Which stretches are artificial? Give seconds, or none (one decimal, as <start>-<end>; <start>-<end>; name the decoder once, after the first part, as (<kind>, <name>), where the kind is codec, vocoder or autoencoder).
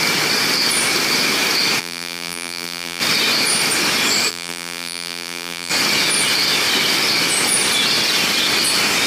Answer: 1.8-3.0 (vocoder, BigVGAN v2); 4.3-5.7